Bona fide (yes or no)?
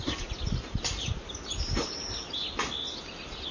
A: yes